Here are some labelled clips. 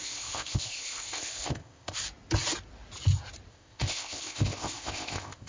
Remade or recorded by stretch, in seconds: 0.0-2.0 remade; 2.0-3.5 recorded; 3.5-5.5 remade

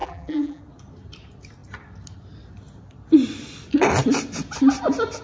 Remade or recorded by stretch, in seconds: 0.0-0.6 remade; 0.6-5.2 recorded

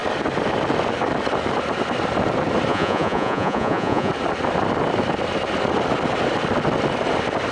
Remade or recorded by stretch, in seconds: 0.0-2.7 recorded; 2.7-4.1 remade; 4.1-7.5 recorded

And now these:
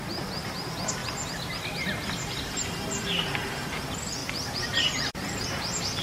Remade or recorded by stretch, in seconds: 0.0-6.0 recorded

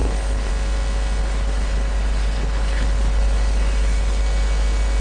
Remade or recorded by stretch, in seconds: 0.0-0.5 remade; 0.5-1.2 recorded; 1.2-4.2 remade; 4.2-5.0 recorded

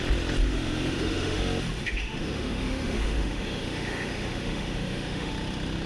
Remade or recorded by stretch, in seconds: 0.0-0.4 recorded; 0.4-1.4 remade; 1.4-1.8 recorded; 1.8-5.3 remade; 5.3-5.9 recorded